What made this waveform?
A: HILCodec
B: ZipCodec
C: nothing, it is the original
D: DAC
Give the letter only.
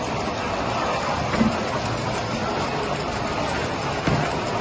C